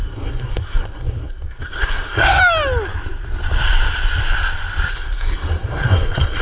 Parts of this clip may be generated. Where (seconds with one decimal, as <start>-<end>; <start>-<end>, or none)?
0.0-2.4; 4.9-6.4